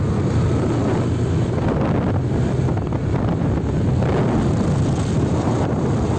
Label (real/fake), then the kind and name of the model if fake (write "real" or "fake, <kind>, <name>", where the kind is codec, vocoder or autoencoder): real